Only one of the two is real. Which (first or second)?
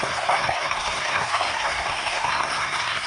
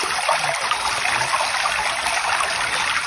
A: second